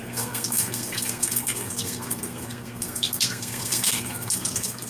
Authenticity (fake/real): fake